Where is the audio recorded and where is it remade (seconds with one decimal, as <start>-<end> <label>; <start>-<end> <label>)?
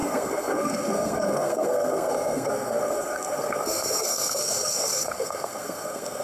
0.0-6.2 remade